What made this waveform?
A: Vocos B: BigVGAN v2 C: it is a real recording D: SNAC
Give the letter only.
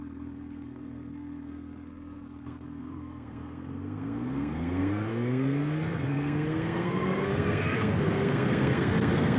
D